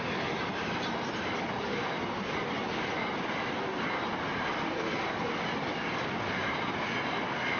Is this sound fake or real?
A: real